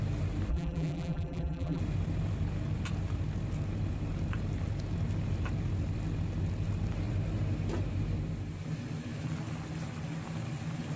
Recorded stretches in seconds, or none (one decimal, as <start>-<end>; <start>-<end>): 0.0-0.5; 1.8-11.0